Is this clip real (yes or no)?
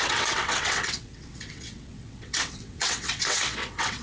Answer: no